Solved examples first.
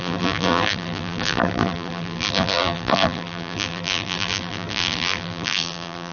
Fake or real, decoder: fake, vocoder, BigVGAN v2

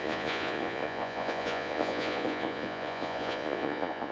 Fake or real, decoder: fake, vocoder, Vocos